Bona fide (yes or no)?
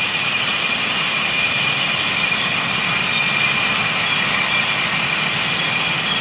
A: yes